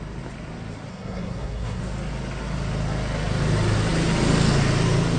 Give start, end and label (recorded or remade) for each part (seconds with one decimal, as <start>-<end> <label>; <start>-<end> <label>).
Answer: 0.0-0.9 recorded; 0.9-1.8 remade; 1.8-5.2 recorded